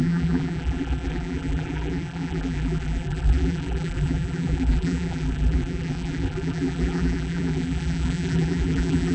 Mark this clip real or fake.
fake